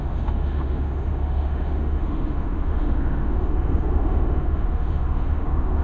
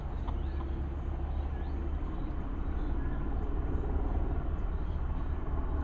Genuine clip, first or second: second